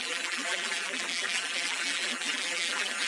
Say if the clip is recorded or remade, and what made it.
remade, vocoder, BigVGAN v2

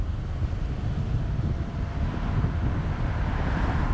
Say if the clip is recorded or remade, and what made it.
recorded